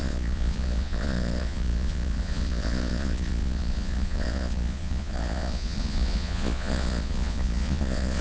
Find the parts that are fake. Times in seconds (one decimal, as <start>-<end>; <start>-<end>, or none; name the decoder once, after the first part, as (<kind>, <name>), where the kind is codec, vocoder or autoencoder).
0.0-8.2 (vocoder, Vocos)